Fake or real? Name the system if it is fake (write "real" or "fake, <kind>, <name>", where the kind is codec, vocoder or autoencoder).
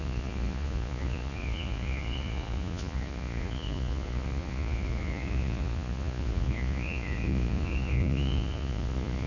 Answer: fake, vocoder, Vocos